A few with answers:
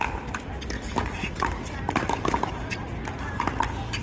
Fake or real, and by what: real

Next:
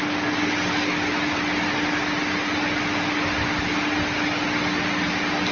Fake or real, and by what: real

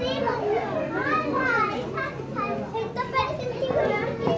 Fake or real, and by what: real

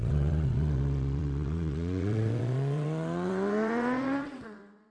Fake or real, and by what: fake, vocoder, WaveNeXt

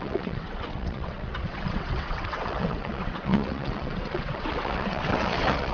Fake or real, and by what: fake, vocoder, WaveNeXt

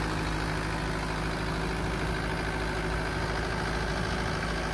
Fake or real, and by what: real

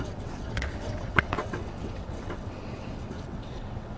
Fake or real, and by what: fake, vocoder, WaveNeXt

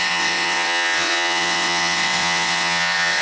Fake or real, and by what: fake, vocoder, WaveNeXt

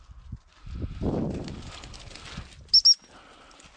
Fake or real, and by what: real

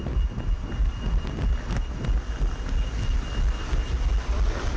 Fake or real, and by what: real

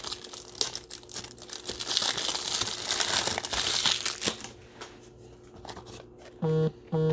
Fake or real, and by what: real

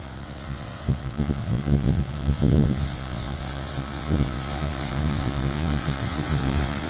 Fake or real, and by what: fake, vocoder, WaveNeXt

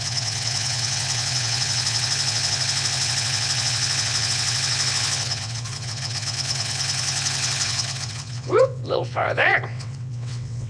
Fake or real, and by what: fake, vocoder, WaveNeXt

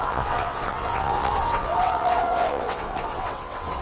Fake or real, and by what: fake, vocoder, WaveNeXt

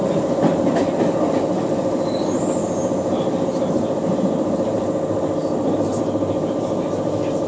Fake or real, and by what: real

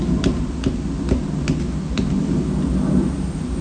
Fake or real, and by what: real